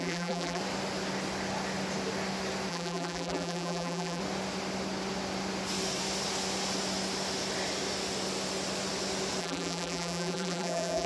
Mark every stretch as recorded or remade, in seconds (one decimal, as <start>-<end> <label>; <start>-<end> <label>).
0.0-0.6 remade; 0.6-2.7 recorded; 2.7-4.2 remade; 4.2-9.4 recorded; 9.4-11.1 remade